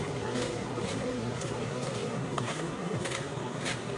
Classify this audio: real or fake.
fake